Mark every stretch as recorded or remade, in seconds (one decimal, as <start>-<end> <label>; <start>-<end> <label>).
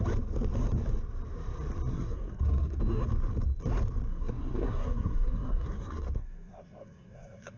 0.0-1.9 recorded; 1.9-2.8 remade; 2.8-4.1 recorded; 4.1-7.6 remade